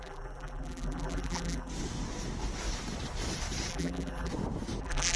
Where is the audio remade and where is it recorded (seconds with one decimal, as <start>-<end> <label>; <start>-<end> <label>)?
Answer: 0.0-1.7 remade; 1.7-3.7 recorded; 3.7-4.3 remade; 4.3-4.8 recorded; 4.8-5.2 remade